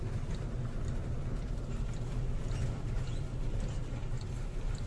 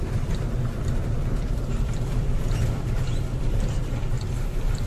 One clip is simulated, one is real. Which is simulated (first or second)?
second